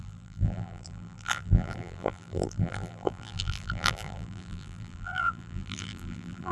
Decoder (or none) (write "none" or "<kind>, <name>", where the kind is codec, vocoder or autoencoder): vocoder, BigVGAN v2